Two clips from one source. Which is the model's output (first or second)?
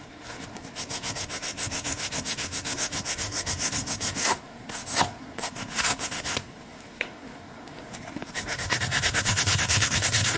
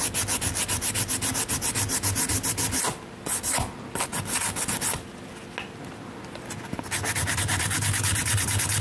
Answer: first